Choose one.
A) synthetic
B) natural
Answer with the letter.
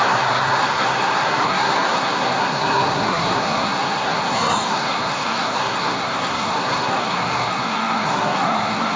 A